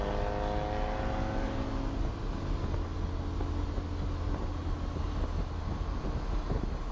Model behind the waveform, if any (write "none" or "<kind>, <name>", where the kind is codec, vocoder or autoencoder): none